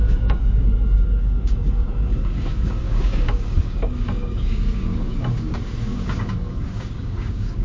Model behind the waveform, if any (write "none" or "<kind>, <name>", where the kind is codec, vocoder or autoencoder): codec, DAC